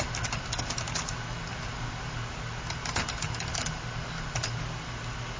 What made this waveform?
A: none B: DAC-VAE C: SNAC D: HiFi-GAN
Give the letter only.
A